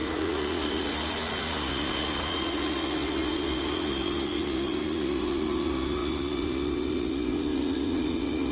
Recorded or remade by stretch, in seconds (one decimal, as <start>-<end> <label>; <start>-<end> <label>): 0.0-8.5 remade